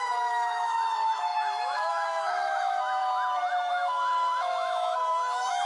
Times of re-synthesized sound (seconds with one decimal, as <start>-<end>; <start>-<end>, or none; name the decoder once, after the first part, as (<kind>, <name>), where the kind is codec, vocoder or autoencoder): 0.0-3.0 (autoencoder, DAC-VAE); 3.7-5.7